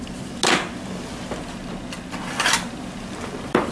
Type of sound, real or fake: real